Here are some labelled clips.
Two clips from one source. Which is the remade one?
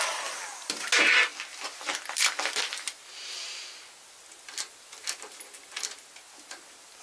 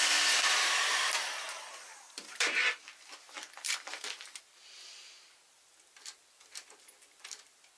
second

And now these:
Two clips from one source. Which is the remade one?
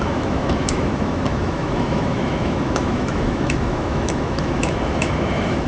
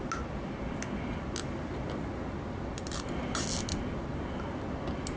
first